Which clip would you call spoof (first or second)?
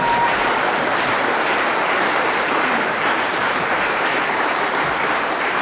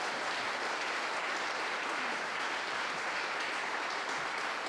first